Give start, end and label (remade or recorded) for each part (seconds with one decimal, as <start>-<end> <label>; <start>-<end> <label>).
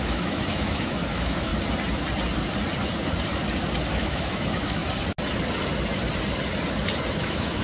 0.0-1.5 remade; 1.5-3.9 recorded; 3.9-4.8 remade; 4.8-7.1 recorded; 7.1-7.6 remade